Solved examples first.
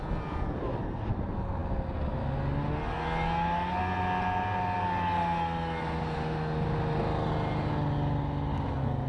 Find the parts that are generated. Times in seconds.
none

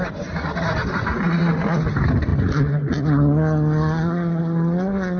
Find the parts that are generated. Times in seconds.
none

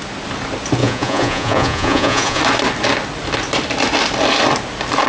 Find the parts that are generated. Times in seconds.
0.8-2.4 (vocoder, Vocos)

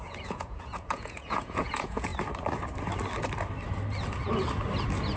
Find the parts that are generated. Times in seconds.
0.0-2.1 (vocoder, Vocos)

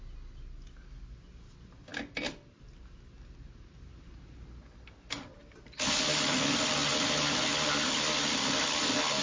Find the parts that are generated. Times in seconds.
none

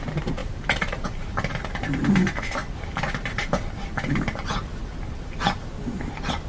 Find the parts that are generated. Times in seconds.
none